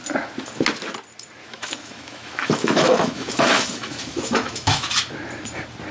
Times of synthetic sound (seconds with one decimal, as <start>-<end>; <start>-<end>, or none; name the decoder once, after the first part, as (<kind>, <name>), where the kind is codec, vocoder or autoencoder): 1.4-4.9 (autoencoder, DAC-VAE)